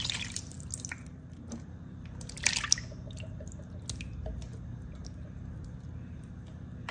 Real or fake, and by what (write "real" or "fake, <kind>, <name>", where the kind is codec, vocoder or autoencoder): real